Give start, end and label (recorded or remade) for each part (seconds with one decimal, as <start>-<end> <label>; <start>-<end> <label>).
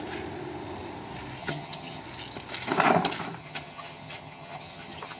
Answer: 0.0-1.4 recorded; 1.4-2.0 remade; 2.0-3.4 recorded; 3.4-5.2 remade